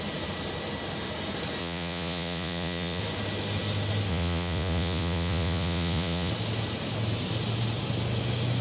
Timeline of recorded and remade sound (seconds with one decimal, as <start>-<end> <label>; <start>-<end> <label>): 0.0-1.6 recorded; 1.6-3.0 remade; 3.0-4.1 recorded; 4.1-6.3 remade; 6.3-8.6 recorded